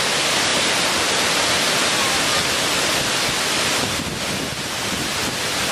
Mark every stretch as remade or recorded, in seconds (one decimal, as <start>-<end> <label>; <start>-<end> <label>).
0.0-5.7 recorded